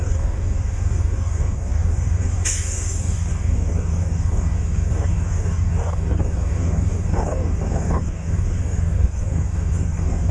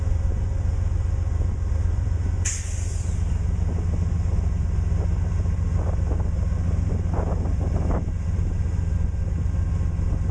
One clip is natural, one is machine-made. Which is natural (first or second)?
second